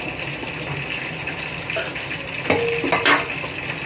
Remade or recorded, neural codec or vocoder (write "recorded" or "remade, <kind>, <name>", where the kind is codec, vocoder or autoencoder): recorded